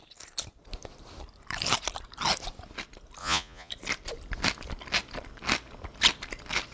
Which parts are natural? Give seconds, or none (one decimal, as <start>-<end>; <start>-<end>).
0.0-3.2; 3.7-6.7